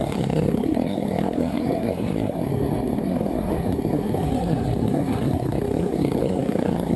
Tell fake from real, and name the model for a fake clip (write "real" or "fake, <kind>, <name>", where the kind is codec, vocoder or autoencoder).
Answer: fake, codec, SNAC